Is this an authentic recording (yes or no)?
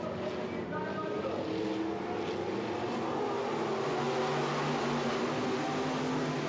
yes